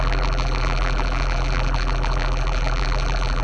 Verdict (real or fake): fake